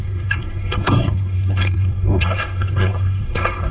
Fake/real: fake